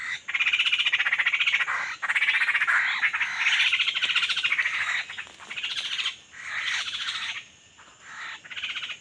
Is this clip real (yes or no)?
yes